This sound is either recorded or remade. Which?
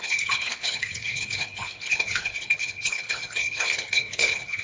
remade